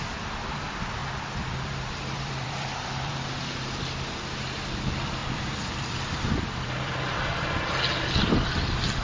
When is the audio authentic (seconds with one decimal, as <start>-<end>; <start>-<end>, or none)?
0.0-1.0; 3.3-5.2; 7.8-9.0